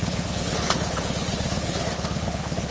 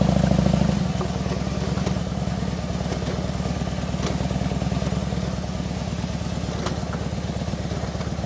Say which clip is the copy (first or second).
first